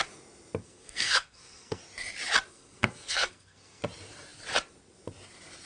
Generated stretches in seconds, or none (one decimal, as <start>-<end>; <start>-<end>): 0.6-1.8; 2.5-3.8